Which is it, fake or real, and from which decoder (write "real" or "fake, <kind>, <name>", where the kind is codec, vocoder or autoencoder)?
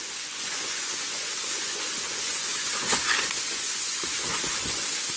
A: fake, vocoder, Vocos